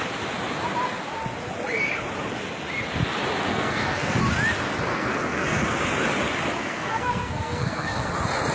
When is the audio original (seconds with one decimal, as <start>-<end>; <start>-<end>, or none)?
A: 0.0-3.5; 4.2-4.9; 5.8-6.6; 8.1-8.5